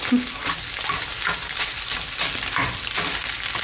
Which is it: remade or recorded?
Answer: recorded